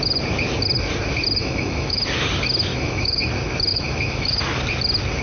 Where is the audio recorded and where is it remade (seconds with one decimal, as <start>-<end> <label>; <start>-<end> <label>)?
0.0-1.4 recorded; 1.4-2.0 remade; 2.0-2.7 recorded; 2.7-3.3 remade; 3.3-3.7 recorded; 3.7-4.4 remade; 4.4-5.2 recorded